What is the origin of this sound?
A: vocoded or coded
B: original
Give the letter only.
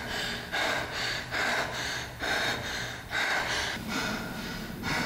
B